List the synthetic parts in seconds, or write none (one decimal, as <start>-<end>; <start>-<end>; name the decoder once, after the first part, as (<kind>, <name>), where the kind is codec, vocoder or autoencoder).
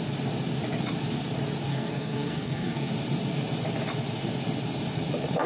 1.7-2.9 (codec, SNAC)